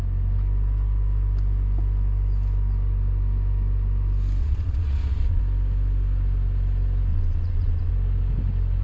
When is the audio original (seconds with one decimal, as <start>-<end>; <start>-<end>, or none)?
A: 0.0-4.4; 5.4-7.1; 7.9-8.8